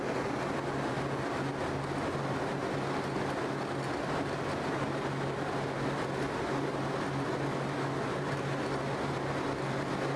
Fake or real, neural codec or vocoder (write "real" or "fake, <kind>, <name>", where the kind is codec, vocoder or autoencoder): real